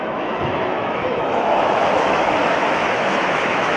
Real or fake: fake